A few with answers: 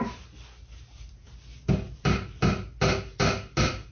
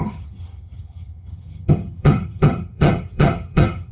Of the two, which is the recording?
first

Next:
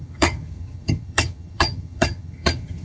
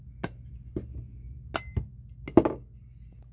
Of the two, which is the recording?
second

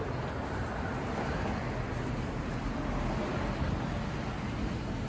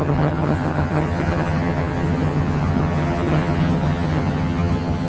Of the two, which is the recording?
first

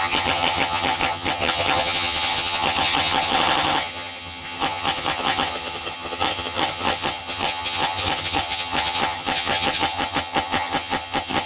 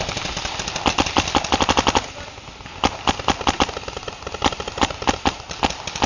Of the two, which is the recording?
second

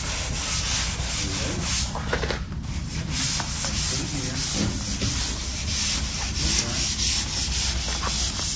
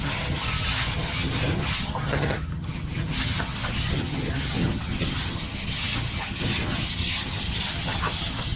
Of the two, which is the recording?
first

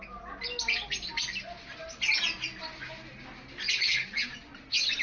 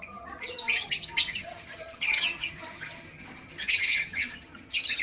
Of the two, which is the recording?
first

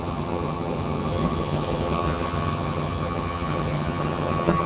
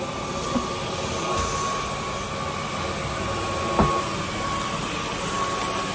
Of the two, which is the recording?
second